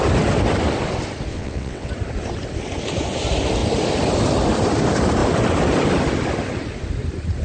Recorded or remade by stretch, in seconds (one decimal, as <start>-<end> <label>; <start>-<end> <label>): 0.0-1.3 recorded; 1.3-1.9 remade; 1.9-7.4 recorded